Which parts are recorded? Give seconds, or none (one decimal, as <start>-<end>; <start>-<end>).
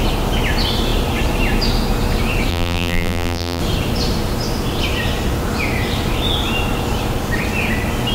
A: 0.0-2.5; 3.6-8.1